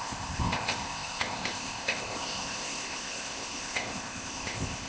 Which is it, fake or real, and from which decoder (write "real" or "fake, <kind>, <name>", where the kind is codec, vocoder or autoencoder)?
fake, codec, ZipCodec